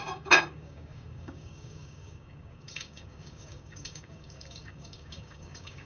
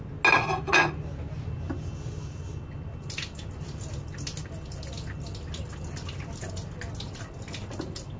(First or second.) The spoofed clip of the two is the first